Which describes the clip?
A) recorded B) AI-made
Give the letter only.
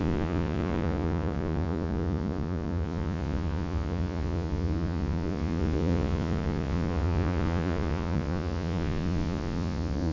B